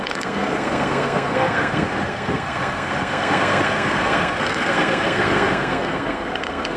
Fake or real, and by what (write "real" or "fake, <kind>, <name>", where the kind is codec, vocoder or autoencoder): fake, codec, SNAC